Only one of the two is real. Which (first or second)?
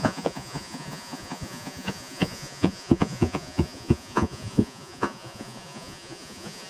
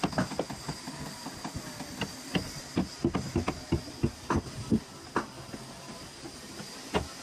second